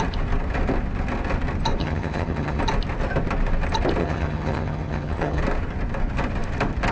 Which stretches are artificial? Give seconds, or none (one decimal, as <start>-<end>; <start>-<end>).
1.8-2.6; 4.0-5.4